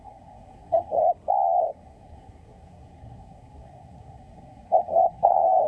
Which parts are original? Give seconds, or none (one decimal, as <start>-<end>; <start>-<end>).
1.0-1.6